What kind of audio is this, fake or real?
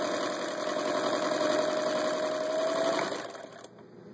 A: real